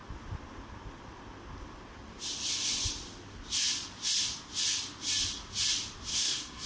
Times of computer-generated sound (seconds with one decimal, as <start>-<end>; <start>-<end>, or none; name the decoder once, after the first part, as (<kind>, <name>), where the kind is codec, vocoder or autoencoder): 6.1-6.7 (codec, SNAC)